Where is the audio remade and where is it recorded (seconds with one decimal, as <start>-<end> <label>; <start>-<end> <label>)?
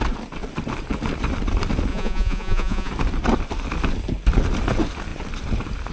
0.0-1.9 recorded; 1.9-2.9 remade; 2.9-5.9 recorded